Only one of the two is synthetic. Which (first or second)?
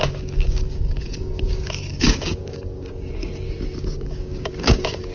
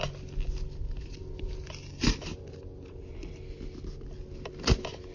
first